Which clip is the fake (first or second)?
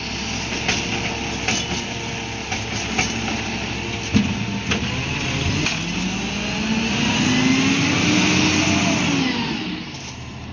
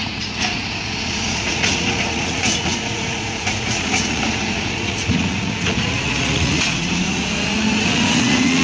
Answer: second